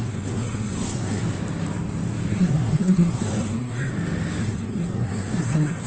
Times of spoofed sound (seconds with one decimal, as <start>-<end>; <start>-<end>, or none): 0.0-1.2; 2.3-3.9; 4.4-5.9